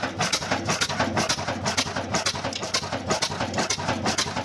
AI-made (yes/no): no